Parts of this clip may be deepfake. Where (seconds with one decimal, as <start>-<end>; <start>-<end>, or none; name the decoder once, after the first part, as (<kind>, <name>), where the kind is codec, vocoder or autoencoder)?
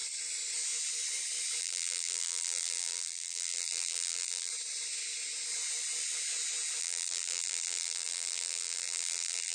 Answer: 1.6-4.5 (vocoder, BigVGAN v2); 6.8-9.5